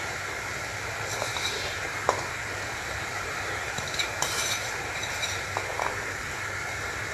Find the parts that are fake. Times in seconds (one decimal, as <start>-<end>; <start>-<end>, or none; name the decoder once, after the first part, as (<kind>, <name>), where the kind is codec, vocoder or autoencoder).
1.3-2.3 (vocoder, BigVGAN v2); 3.1-5.1; 5.7-6.2